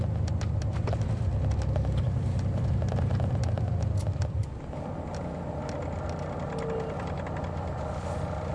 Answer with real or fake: real